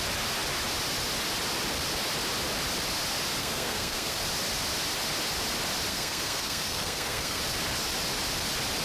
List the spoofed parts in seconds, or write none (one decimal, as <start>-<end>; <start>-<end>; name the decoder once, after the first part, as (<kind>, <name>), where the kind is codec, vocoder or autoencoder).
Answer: 3.4-4.2 (codec, SNAC); 5.9-7.4